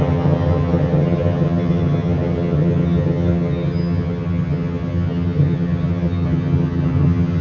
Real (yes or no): no